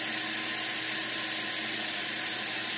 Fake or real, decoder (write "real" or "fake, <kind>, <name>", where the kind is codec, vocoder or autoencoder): real